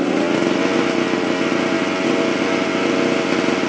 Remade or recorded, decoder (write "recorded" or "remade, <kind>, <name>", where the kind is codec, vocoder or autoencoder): recorded